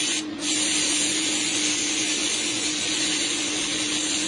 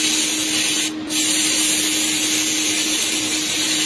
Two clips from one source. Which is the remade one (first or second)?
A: first